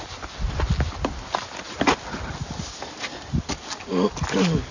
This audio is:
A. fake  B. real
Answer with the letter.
B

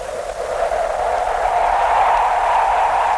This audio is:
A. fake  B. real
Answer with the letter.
B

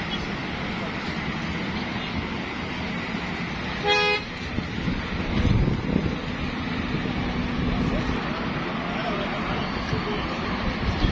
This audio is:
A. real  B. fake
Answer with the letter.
A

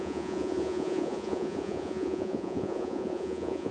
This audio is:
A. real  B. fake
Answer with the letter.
B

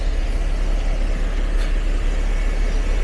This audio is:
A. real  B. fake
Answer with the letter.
A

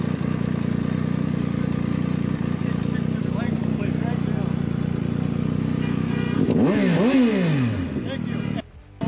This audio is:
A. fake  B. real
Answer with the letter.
B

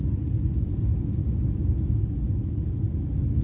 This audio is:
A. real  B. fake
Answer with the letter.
A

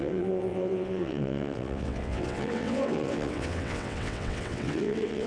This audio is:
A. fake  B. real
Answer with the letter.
A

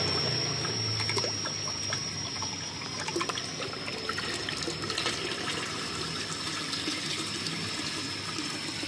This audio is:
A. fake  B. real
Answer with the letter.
B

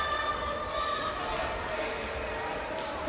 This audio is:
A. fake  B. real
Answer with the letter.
B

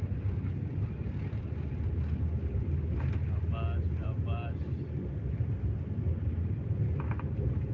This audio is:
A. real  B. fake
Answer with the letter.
A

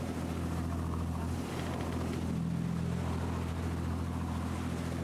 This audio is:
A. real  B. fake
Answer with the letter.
A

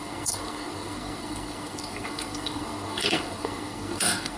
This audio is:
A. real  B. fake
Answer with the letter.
B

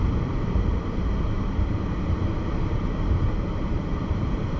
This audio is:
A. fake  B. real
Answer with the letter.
A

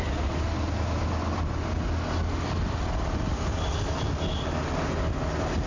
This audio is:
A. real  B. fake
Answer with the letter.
A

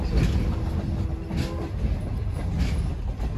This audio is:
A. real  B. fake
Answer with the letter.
A